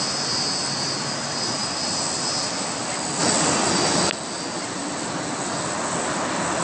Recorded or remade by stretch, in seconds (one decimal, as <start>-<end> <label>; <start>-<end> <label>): 0.0-6.6 recorded

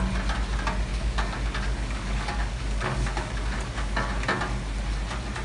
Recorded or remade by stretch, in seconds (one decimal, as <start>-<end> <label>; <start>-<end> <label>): 0.0-0.9 recorded; 0.9-4.1 remade; 4.1-5.4 recorded